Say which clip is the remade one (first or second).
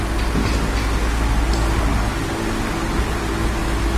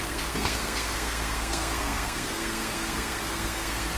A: second